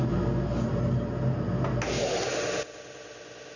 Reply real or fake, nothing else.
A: real